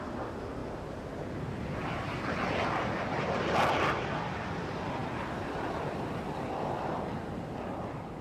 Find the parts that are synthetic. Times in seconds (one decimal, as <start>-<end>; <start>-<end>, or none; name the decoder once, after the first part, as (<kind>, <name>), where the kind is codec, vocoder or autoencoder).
none